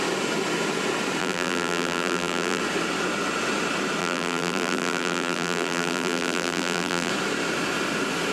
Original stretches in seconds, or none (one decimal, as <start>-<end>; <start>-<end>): 0.0-1.2; 2.6-4.0; 7.1-8.3